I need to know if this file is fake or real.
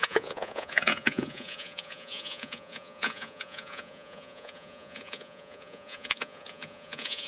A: fake